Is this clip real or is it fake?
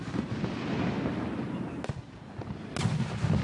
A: real